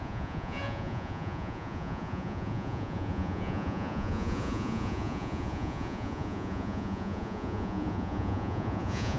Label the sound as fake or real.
fake